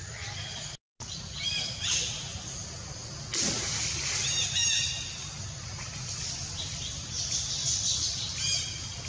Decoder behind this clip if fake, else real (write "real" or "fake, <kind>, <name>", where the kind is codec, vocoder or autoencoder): real